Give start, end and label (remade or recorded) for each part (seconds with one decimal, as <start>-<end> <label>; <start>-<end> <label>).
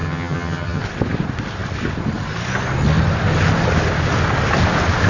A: 0.0-0.8 remade; 0.8-5.1 recorded